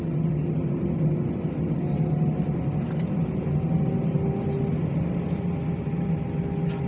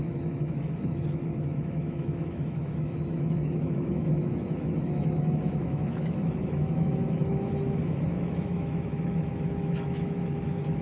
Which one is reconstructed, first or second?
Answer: second